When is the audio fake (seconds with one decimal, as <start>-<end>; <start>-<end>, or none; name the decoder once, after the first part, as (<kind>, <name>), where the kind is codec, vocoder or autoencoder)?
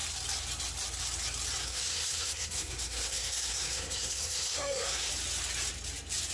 1.6-5.1 (codec, SNAC)